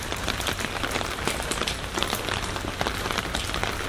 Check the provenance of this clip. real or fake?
real